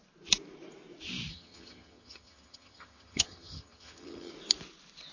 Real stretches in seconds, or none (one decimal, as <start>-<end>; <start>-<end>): 0.0-1.3; 4.3-5.1